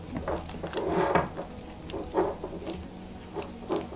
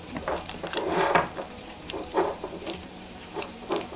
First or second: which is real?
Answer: first